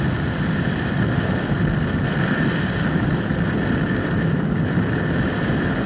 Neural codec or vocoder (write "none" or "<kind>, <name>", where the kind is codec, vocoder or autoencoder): none